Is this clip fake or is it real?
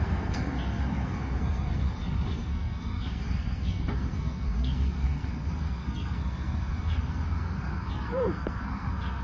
fake